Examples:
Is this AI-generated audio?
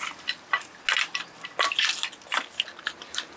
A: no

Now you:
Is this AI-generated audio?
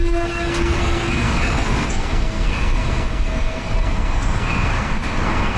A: yes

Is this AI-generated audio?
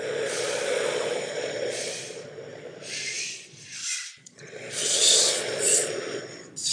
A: yes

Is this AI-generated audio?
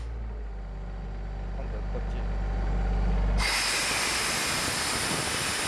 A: no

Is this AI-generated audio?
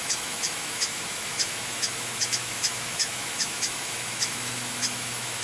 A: yes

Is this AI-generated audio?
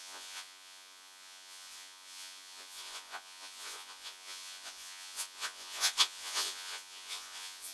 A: yes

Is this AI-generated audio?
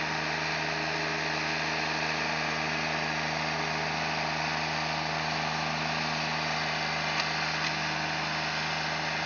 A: no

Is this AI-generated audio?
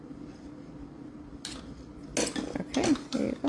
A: no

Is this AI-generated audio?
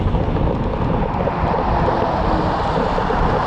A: no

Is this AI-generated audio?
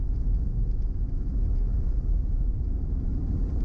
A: no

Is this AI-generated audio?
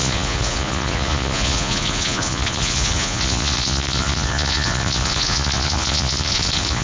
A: yes